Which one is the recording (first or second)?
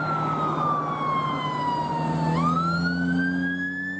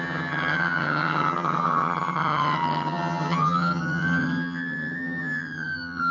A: first